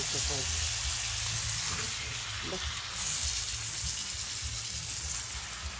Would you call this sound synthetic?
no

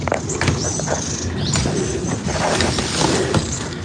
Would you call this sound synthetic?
no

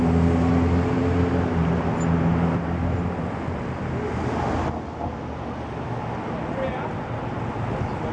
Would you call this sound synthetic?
no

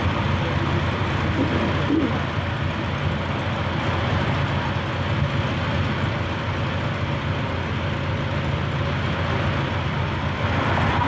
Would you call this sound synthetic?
no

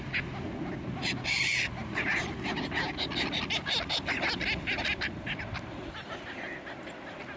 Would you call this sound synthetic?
no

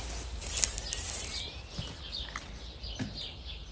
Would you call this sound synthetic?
no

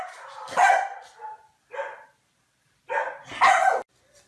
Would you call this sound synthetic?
no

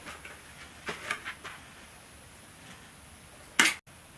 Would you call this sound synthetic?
no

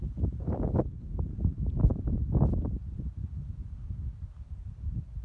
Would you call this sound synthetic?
no